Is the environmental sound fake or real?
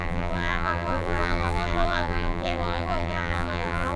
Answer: fake